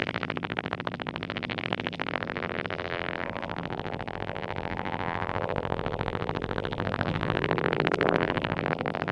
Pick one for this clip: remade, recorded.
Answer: remade